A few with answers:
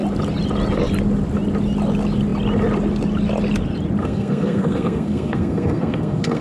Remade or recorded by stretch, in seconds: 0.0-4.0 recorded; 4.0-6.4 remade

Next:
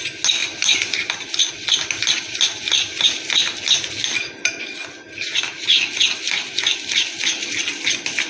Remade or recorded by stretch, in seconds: 0.0-8.3 recorded

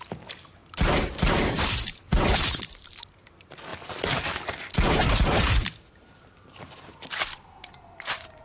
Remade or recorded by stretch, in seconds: 0.0-8.4 recorded

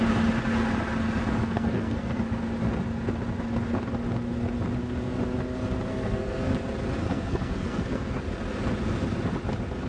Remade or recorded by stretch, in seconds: 0.0-1.4 recorded; 1.4-2.2 remade; 2.2-5.9 recorded; 5.9-6.5 remade; 6.5-7.0 recorded; 7.0-8.2 remade; 8.2-9.9 recorded

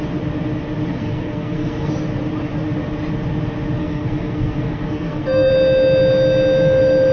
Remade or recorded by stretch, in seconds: 0.0-0.9 recorded; 0.9-1.9 remade; 1.9-3.8 recorded; 3.8-5.5 remade; 5.5-7.1 recorded

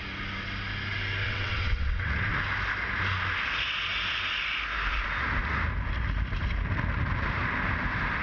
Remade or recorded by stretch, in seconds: 0.0-1.2 recorded; 1.2-2.3 remade; 2.3-8.2 recorded